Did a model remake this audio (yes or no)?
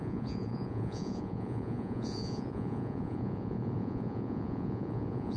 yes